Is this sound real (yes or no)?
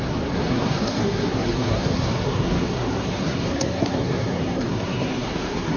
no